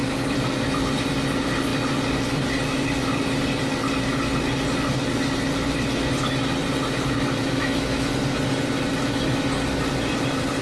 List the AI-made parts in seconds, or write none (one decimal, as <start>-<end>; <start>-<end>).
7.4-8.1